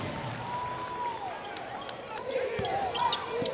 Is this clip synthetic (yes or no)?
no